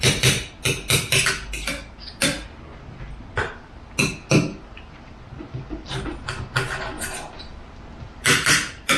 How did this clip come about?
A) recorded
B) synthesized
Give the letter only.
A